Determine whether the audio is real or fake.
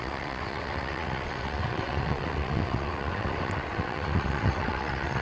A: fake